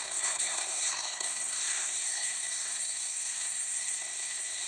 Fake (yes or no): yes